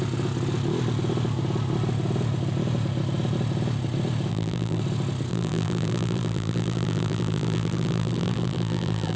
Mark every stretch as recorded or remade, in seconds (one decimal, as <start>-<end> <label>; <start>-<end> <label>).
0.0-4.3 recorded; 4.3-4.8 remade; 4.8-5.3 recorded; 5.3-9.2 remade